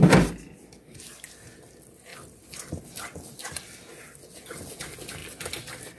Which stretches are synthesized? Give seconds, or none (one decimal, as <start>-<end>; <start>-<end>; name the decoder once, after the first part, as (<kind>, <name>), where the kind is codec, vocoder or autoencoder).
none